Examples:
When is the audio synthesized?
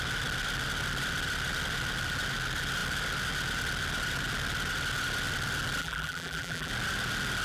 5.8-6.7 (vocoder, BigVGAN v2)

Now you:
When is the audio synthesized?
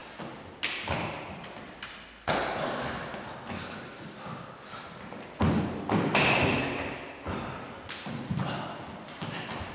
none